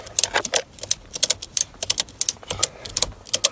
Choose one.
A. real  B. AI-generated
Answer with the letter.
A